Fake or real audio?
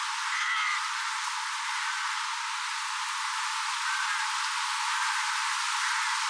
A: real